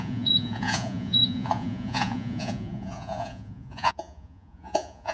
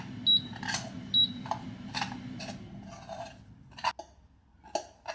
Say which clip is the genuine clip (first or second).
second